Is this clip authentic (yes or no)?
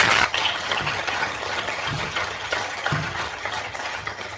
no